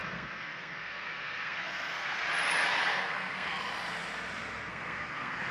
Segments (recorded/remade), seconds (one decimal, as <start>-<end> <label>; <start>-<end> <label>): 0.0-2.2 remade; 2.2-2.9 recorded; 2.9-3.6 remade; 3.6-4.7 recorded; 4.7-5.5 remade